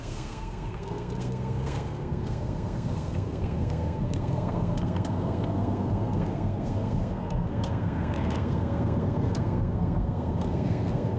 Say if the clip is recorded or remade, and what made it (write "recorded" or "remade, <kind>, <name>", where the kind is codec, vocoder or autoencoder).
remade, codec, SNAC